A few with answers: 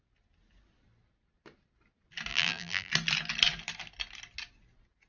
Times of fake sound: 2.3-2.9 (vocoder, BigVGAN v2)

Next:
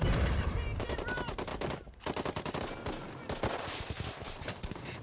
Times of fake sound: 0.0-1.5 (vocoder, BigVGAN v2); 3.6-5.0

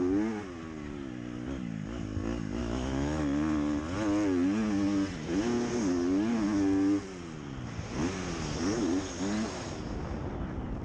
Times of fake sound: 2.6-3.2 (autoencoder, DAC-VAE)

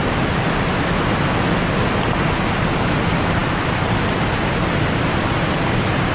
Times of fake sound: none

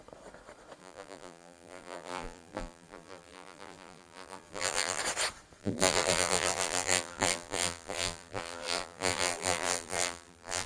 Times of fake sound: 0.8-5.0 (vocoder, BigVGAN v2); 5.6-10.7

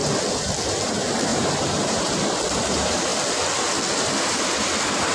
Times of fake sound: 0.7-3.1 (vocoder, BigVGAN v2)

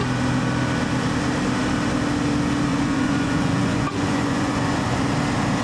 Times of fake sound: 2.7-5.0 (vocoder, Vocos)